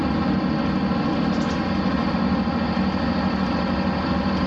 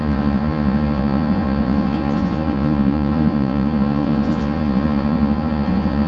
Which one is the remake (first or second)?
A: second